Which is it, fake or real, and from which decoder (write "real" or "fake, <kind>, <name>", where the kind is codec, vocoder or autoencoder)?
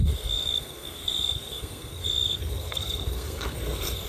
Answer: fake, codec, SNAC